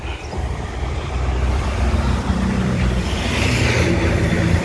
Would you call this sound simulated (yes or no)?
yes